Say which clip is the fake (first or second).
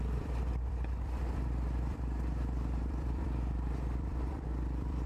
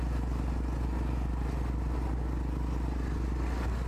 first